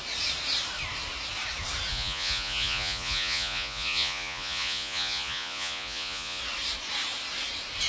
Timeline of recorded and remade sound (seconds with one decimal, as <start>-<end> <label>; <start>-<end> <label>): 0.0-1.9 recorded; 1.9-6.4 remade; 6.4-7.9 recorded